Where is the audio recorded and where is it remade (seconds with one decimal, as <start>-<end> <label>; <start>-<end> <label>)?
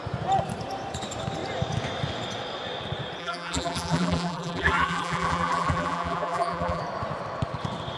0.0-3.2 recorded; 3.2-6.8 remade; 6.8-8.0 recorded